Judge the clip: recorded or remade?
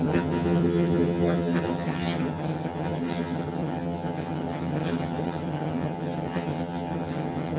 remade